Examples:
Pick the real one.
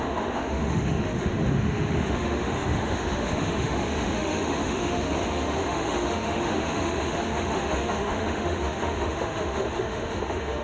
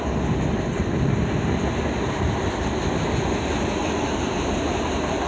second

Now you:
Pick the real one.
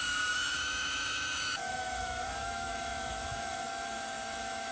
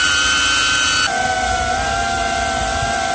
second